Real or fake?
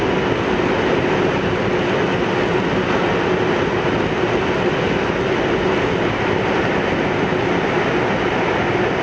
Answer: real